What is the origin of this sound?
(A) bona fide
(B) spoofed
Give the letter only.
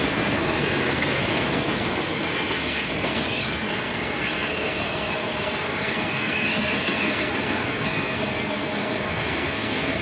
B